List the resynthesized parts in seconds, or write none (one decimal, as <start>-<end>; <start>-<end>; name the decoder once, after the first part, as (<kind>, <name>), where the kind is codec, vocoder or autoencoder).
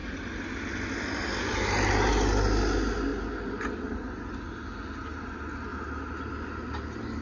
none